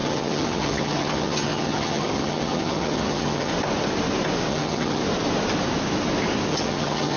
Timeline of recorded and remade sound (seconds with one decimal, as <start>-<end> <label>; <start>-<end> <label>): 0.0-3.5 remade; 3.5-4.5 recorded; 4.5-5.0 remade; 5.0-6.5 recorded; 6.5-7.2 remade